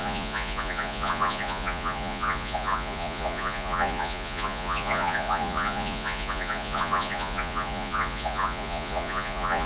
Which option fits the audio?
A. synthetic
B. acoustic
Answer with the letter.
A